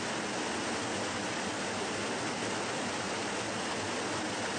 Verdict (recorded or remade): recorded